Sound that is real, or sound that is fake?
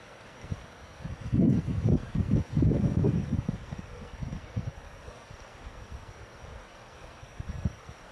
fake